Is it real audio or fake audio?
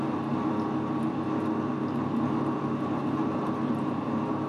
real